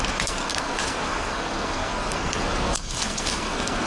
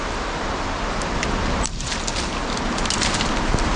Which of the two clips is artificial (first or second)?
first